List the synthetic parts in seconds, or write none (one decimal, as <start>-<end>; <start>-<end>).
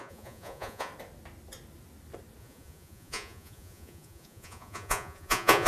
0.0-0.9; 2.4-5.7